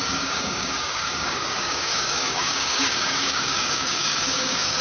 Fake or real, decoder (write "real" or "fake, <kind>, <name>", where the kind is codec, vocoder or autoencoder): fake, codec, DAC